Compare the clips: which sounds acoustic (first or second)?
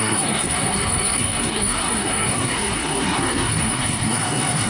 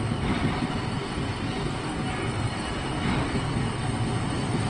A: second